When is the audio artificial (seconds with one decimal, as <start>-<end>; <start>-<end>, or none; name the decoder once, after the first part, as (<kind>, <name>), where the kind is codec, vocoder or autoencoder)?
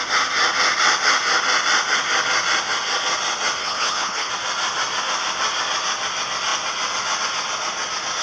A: 3.6-4.3 (codec, HILCodec)